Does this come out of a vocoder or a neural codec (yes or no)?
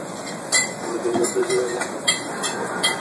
yes